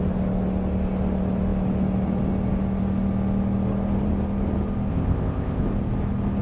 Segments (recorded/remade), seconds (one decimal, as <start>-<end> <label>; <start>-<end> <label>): 0.0-4.9 recorded; 4.9-5.6 remade; 5.6-6.4 recorded